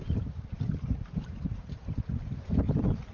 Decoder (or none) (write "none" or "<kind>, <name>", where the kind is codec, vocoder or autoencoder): vocoder, BigVGAN v2